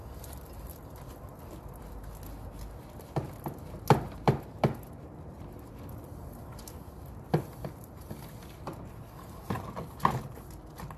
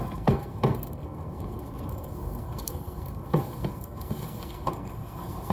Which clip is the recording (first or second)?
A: first